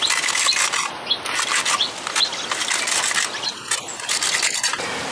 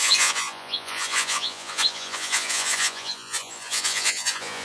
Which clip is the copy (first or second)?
second